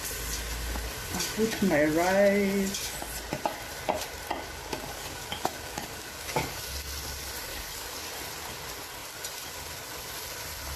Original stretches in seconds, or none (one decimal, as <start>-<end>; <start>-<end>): 0.0-4.6; 6.7-7.5; 8.1-10.8